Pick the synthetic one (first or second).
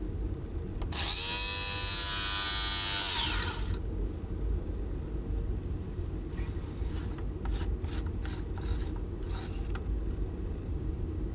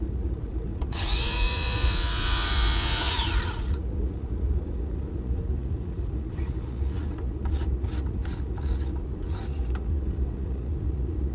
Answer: second